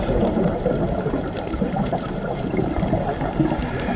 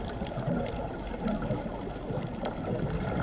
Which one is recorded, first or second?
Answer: second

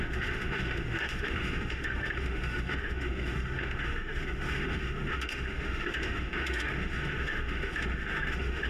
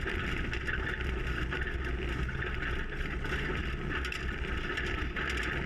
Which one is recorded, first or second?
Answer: second